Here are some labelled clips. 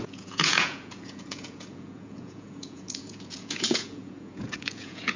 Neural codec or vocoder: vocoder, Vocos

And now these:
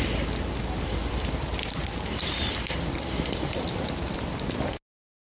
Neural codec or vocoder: none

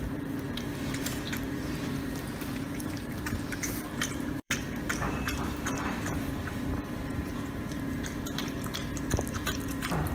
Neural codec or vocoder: vocoder, BigVGAN v2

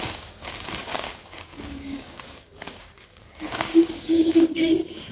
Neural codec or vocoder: codec, DAC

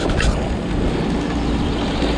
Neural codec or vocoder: none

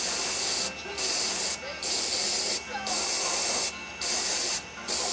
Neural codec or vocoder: none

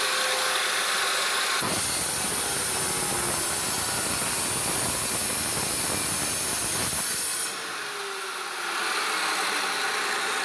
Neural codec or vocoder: none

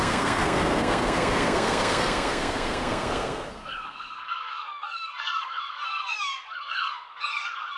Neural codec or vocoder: codec, SNAC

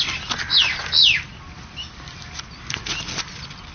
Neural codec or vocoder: none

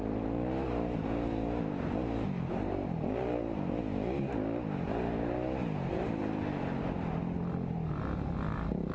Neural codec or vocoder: none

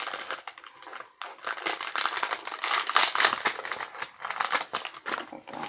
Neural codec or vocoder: none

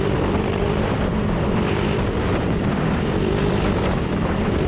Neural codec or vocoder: vocoder, BigVGAN v2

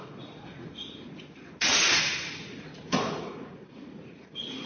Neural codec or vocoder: vocoder, Vocos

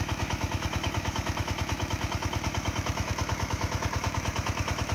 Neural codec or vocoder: autoencoder, DAC-VAE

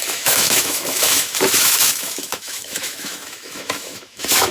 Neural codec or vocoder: autoencoder, DAC-VAE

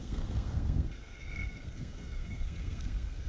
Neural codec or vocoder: codec, SNAC